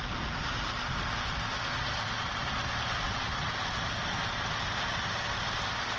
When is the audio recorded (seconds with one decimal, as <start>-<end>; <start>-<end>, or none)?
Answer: 0.0-6.0

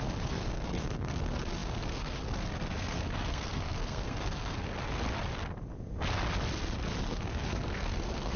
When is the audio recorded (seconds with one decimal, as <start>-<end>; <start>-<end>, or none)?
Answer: 4.7-7.0

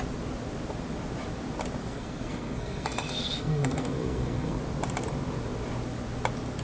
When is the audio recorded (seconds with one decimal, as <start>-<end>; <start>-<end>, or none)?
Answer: 0.0-1.8; 4.6-6.6

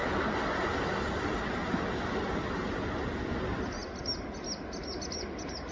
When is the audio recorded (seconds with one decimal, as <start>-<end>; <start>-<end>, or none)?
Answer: 0.0-5.7

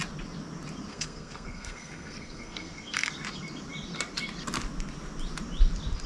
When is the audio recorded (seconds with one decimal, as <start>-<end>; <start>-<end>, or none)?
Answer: 0.0-0.9; 3.1-6.1

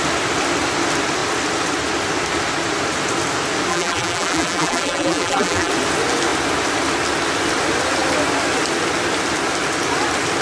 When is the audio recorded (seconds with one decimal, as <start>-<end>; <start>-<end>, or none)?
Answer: 0.0-3.7; 5.7-10.4